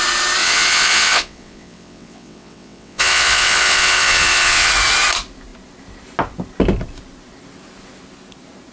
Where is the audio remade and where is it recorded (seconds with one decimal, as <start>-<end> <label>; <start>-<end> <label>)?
0.0-0.4 recorded; 0.4-4.7 remade; 4.7-8.7 recorded